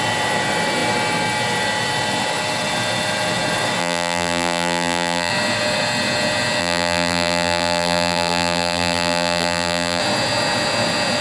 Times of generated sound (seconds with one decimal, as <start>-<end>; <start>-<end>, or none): 3.8-5.3; 6.6-10.0